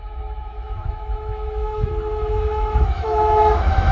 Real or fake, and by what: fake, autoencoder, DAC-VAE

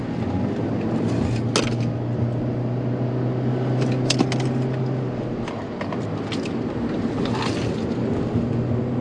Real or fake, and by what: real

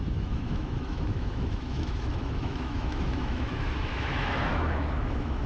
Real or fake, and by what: fake, autoencoder, DAC-VAE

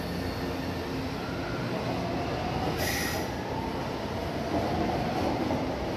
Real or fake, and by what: real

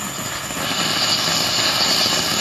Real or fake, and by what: real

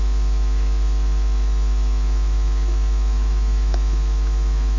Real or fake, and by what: fake, autoencoder, DAC-VAE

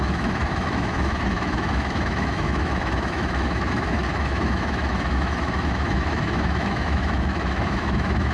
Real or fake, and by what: fake, autoencoder, DAC-VAE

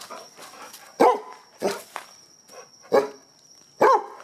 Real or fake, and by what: real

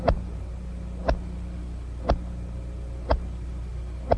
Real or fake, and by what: real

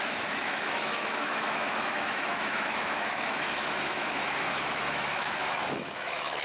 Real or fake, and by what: fake, autoencoder, DAC-VAE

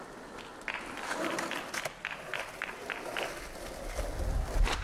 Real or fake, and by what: real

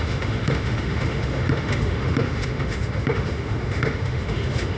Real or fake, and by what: fake, autoencoder, DAC-VAE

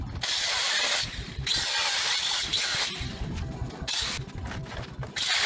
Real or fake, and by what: real